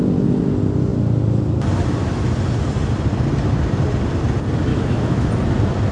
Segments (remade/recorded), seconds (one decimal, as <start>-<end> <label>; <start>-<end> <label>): 0.0-4.7 recorded; 4.7-5.3 remade; 5.3-5.9 recorded